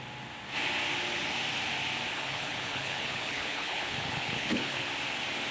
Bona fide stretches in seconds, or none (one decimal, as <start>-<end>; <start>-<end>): 0.0-2.1; 4.9-5.5